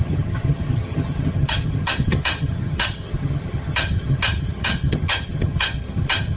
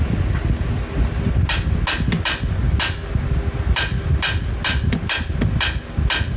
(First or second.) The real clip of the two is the second